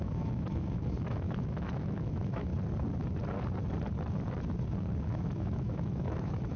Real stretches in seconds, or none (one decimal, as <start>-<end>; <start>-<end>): 2.5-5.0

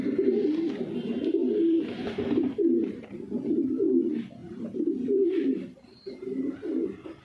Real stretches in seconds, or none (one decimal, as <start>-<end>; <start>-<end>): 0.0-1.4; 3.4-4.4; 6.4-7.2

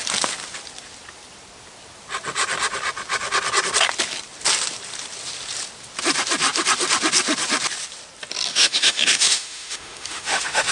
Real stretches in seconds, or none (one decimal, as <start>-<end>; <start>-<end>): 0.0-8.5

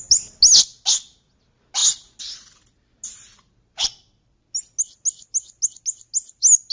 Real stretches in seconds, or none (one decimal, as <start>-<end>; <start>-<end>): 0.0-6.7

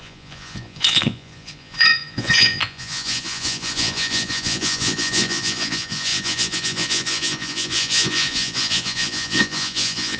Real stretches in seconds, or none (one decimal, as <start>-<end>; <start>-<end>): none

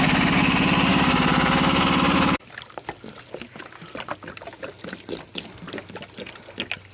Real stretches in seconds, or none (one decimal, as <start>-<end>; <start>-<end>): 0.0-6.9